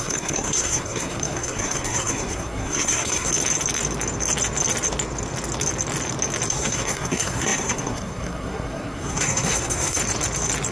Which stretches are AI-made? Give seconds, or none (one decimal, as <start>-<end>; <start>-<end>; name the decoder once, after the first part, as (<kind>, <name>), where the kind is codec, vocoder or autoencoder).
0.0-3.3 (codec, SNAC); 6.5-10.0